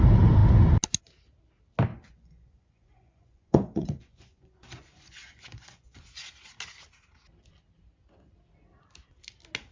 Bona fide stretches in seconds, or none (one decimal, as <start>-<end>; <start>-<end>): 0.0-1.9; 6.0-9.7